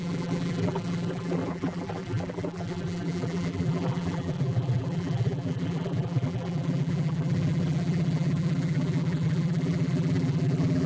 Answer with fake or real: fake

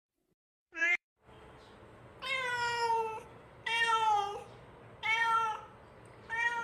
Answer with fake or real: fake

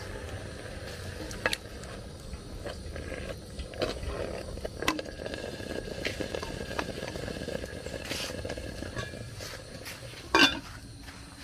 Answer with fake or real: real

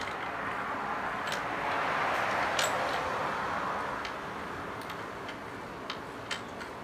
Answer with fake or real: real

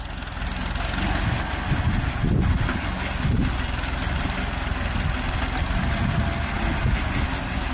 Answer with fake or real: real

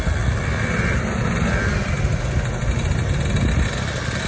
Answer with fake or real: real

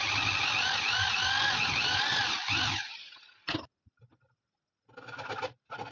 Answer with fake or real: real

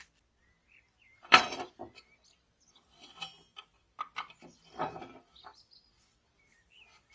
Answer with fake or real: fake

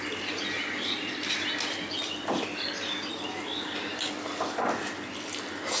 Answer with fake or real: real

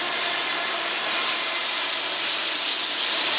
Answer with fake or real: fake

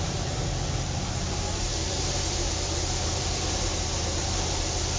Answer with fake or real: fake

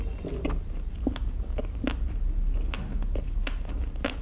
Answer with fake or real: real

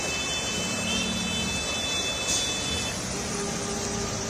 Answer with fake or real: real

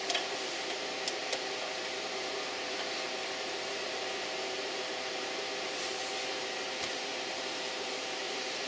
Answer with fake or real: fake